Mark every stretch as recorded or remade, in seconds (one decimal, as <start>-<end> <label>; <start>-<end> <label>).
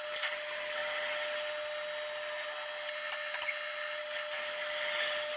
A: 0.0-5.4 recorded